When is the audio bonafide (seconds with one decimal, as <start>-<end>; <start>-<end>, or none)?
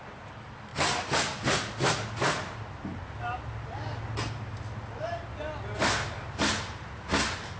0.0-7.6